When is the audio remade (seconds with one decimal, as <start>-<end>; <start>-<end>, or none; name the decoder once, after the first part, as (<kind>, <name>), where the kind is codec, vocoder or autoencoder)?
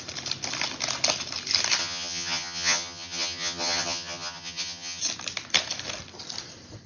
1.8-5.0 (vocoder, HiFi-GAN)